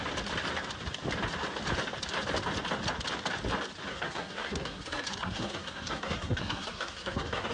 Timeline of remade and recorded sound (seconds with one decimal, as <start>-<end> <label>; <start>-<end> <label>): 0.0-3.9 recorded; 3.9-7.5 remade

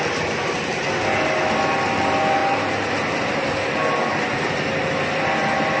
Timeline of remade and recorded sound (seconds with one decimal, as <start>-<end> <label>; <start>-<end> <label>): 0.0-5.8 recorded

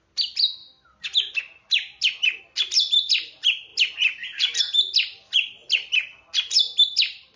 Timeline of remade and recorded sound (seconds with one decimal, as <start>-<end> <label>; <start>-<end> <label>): 0.0-7.4 recorded

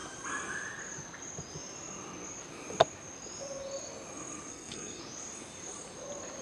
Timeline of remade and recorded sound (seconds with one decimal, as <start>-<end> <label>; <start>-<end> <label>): 0.0-4.5 recorded; 4.5-5.0 remade; 5.0-6.4 recorded

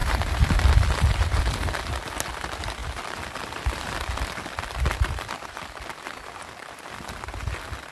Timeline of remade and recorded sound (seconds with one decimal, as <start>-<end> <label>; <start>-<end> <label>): 0.0-1.4 remade; 1.4-2.8 recorded; 2.8-6.9 remade; 6.9-7.9 recorded

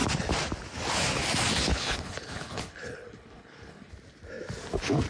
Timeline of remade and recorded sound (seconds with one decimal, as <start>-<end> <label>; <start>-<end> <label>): 0.0-1.7 recorded; 1.7-3.9 remade; 3.9-5.1 recorded

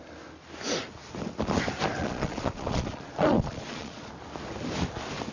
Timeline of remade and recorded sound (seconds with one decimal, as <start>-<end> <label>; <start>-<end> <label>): 0.0-2.0 recorded; 2.0-4.1 remade; 4.1-5.3 recorded

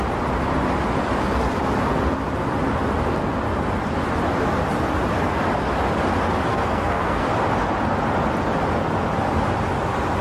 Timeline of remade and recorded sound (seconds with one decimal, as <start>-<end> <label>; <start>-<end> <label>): 0.0-6.5 recorded; 6.5-7.3 remade; 7.3-10.2 recorded